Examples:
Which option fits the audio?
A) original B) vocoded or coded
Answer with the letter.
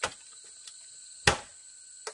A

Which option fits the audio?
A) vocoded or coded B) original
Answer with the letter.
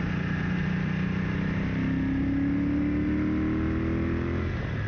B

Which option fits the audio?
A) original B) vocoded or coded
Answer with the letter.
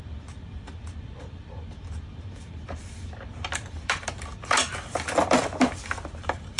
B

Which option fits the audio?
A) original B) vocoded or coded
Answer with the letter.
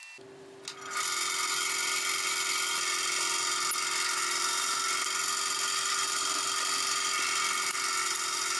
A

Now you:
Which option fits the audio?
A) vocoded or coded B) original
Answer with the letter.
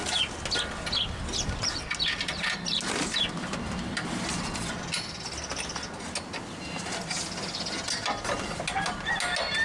B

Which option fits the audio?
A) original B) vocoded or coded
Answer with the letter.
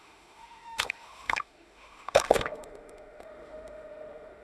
B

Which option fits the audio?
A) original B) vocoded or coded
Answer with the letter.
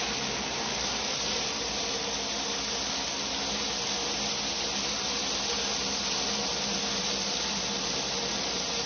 A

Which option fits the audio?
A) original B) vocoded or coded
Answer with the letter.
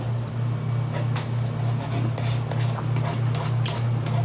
A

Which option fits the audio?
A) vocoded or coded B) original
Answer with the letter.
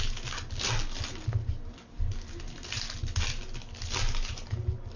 B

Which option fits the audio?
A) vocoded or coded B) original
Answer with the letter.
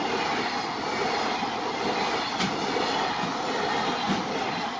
B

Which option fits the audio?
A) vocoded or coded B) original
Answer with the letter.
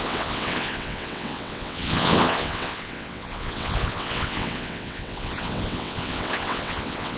A